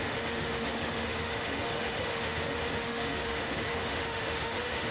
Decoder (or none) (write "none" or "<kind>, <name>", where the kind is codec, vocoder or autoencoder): autoencoder, DAC-VAE